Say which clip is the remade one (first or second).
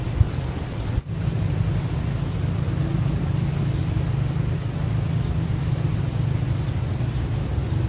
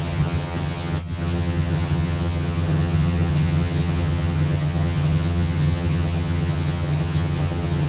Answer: second